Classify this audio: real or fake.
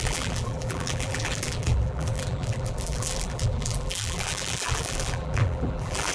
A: fake